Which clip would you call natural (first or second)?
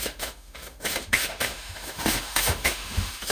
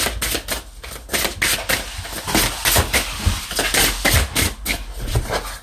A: second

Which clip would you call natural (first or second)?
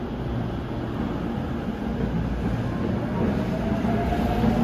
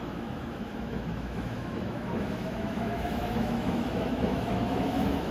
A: first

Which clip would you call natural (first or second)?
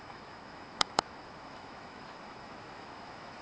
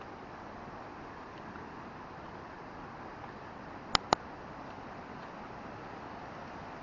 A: second